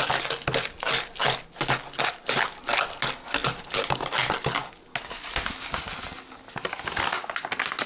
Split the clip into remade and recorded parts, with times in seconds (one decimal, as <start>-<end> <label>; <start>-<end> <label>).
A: 0.0-7.9 recorded